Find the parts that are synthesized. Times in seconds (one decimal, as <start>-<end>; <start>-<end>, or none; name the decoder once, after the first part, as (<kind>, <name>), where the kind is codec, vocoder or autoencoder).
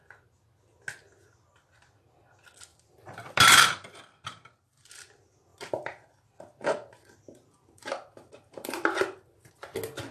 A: 2.7-5.1 (vocoder, BigVGAN v2); 5.5-9.5